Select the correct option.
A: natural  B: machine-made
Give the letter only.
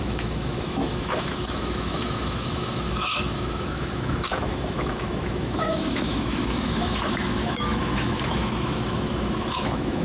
B